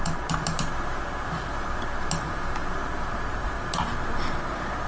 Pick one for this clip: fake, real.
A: real